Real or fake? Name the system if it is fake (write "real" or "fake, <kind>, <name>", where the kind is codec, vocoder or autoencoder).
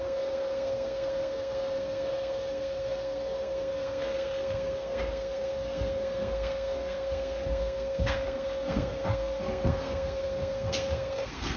fake, codec, SNAC